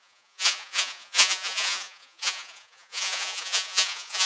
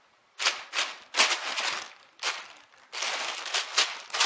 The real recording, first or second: second